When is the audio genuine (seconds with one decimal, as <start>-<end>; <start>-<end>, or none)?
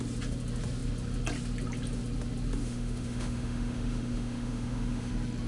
0.0-2.6; 5.1-5.5